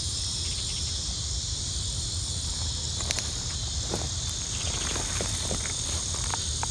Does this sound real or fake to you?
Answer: fake